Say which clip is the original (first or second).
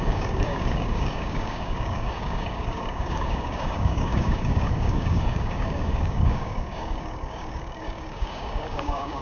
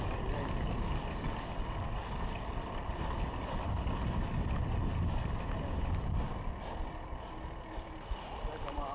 second